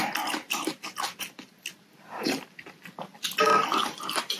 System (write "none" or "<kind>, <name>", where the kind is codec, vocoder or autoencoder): none